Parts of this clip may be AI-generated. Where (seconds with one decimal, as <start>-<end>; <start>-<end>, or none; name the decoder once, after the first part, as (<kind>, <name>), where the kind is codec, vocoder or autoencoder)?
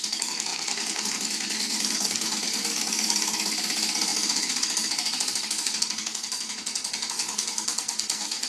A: 0.0-8.5 (codec, SNAC)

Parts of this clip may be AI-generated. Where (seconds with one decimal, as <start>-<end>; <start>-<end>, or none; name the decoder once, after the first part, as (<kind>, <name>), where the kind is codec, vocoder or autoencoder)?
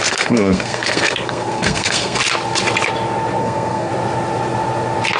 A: 0.0-2.2 (codec, SNAC); 3.4-3.9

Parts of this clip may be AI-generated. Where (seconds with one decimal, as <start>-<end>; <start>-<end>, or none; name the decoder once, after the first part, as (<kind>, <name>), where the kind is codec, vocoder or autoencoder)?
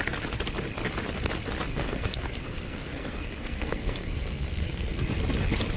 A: 1.7-5.2 (codec, SNAC)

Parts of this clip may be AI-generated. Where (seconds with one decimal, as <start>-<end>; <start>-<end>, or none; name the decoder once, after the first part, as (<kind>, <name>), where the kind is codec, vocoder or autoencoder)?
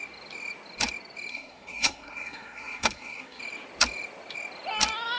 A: 1.3-3.4 (codec, SNAC)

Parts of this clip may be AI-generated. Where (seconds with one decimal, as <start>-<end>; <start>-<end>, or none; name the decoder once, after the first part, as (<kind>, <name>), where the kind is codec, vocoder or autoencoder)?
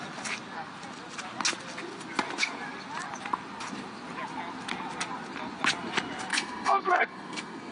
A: 6.3-7.7 (codec, SNAC)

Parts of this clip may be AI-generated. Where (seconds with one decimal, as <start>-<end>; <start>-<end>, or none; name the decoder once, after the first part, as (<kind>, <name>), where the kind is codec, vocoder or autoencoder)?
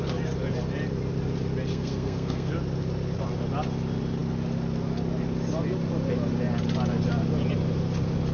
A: 1.7-2.5 (codec, SNAC)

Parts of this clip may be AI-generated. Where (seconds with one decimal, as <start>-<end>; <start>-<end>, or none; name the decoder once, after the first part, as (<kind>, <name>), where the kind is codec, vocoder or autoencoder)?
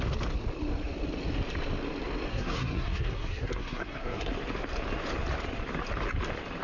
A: 2.3-4.3 (codec, SNAC)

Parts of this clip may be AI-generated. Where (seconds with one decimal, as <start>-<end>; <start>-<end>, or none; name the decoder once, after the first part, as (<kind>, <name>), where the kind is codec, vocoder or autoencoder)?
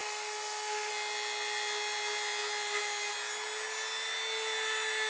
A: 0.0-0.9 (codec, SNAC)